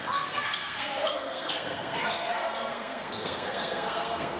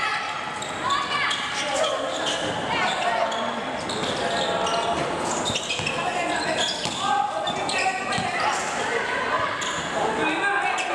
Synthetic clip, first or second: first